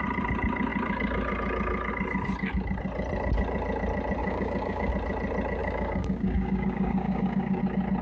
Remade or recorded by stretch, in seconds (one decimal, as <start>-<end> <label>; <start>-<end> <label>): 0.0-4.2 recorded; 4.2-4.9 remade; 4.9-5.6 recorded; 5.6-7.6 remade; 7.6-8.0 recorded